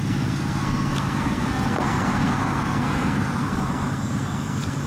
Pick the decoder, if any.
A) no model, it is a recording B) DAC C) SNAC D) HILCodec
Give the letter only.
C